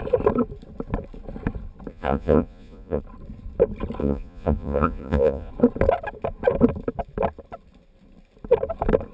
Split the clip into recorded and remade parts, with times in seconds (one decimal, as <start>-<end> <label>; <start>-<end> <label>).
0.0-1.9 recorded; 1.9-3.0 remade; 3.0-4.0 recorded; 4.0-5.5 remade; 5.5-9.1 recorded